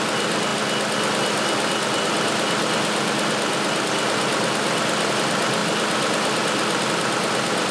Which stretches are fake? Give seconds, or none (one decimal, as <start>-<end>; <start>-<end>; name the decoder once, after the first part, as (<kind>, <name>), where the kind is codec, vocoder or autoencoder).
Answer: none

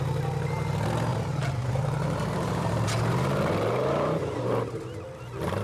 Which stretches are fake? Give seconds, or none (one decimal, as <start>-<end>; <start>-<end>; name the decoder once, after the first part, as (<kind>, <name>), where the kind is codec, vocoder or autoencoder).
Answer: 1.1-4.5 (vocoder, BigVGAN v2)

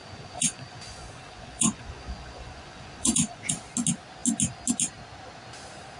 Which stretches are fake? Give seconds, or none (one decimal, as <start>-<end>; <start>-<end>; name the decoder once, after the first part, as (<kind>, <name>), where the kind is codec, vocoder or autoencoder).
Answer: 0.0-3.6 (vocoder, Vocos)

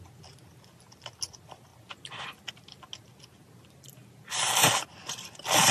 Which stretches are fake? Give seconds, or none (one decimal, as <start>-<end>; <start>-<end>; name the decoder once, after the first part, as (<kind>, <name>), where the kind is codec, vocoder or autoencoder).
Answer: none

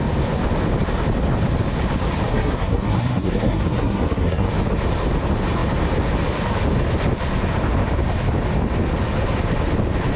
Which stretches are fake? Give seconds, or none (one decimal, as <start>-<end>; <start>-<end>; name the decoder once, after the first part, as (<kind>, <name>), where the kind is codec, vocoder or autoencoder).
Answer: 2.3-4.5 (codec, SNAC)